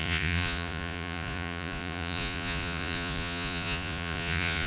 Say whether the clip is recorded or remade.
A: remade